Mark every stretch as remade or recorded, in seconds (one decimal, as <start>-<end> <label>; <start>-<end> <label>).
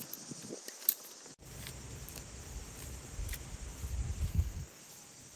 0.0-4.3 recorded; 4.3-4.8 remade; 4.8-5.4 recorded